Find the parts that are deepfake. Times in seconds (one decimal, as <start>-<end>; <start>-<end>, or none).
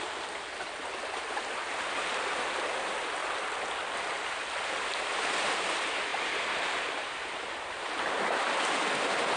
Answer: 6.1-7.3